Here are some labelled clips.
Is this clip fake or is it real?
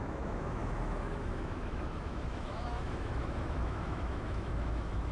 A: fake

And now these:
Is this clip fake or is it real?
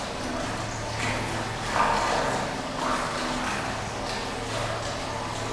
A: real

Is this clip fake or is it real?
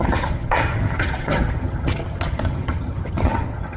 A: fake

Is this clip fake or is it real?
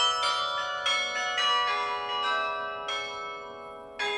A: real